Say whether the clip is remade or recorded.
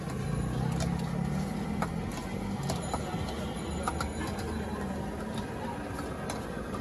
recorded